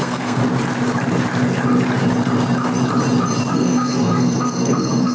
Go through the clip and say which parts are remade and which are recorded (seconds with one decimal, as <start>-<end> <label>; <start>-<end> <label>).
0.0-0.4 remade; 0.4-3.5 recorded; 3.5-5.1 remade